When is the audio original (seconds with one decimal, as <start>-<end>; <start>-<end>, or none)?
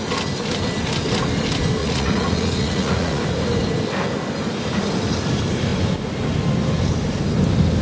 0.0-1.8; 3.2-7.8